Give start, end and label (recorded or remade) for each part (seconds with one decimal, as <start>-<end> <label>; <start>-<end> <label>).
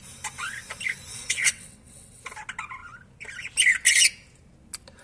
0.0-1.1 recorded; 1.1-2.2 remade; 2.2-5.0 recorded